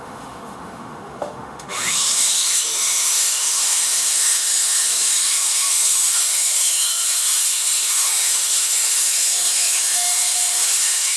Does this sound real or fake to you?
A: fake